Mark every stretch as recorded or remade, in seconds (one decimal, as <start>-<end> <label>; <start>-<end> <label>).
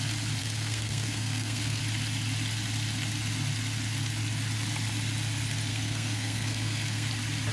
0.0-0.4 recorded; 0.4-1.8 remade; 1.8-5.7 recorded; 5.7-7.1 remade; 7.1-7.5 recorded